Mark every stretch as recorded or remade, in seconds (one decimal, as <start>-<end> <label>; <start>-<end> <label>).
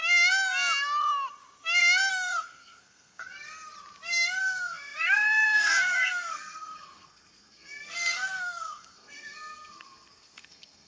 0.0-2.1 recorded; 2.1-3.2 remade; 3.2-4.4 recorded; 4.4-10.9 remade